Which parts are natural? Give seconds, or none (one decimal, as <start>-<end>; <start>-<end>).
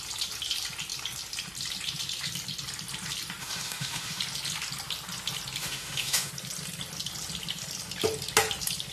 0.0-3.4; 4.2-5.6; 6.3-8.9